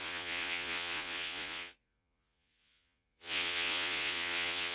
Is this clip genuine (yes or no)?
no